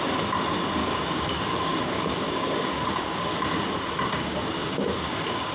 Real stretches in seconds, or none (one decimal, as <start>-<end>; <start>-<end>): 0.0-0.8; 3.4-4.1